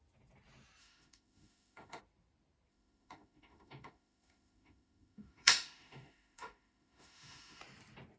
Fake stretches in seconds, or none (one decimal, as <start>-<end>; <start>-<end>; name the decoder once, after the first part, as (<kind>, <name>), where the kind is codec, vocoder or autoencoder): 0.8-2.0 (autoencoder, DAC-VAE); 2.7-7.6